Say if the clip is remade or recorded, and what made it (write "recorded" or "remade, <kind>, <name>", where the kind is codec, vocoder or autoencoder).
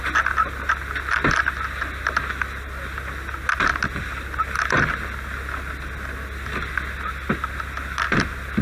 recorded